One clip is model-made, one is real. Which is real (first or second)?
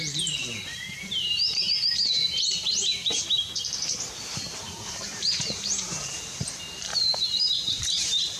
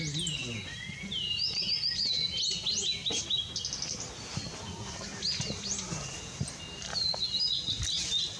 second